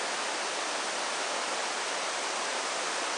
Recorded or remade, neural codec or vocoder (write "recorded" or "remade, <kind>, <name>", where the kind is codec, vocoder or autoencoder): recorded